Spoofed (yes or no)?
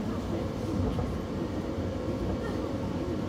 yes